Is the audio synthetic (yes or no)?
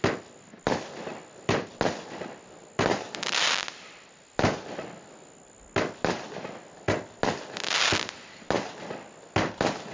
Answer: no